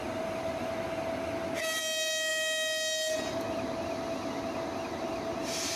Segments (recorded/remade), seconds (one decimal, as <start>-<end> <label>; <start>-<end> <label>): 0.0-5.8 recorded